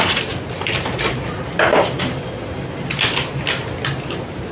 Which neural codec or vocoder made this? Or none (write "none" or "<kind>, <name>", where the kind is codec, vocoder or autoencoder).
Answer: none